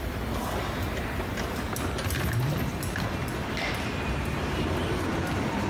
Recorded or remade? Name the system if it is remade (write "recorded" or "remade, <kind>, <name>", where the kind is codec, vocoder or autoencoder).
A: recorded